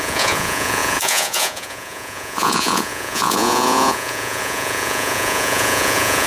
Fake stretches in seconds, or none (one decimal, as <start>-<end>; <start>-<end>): 0.0-6.3